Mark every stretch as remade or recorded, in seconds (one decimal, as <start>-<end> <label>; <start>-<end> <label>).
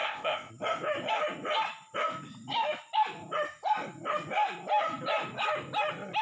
0.0-0.5 remade; 0.5-6.2 recorded